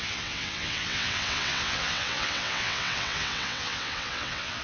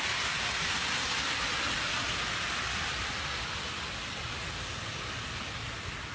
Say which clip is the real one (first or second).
second